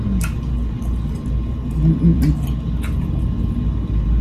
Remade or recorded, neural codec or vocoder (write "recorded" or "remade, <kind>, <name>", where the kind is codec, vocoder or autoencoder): recorded